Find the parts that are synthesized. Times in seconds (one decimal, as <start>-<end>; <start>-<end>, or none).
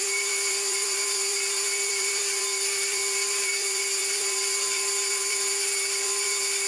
0.0-6.7